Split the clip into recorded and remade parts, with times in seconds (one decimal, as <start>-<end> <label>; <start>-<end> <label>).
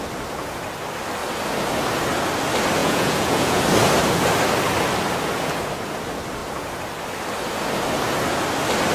0.0-2.8 recorded; 2.8-3.6 remade; 3.6-8.9 recorded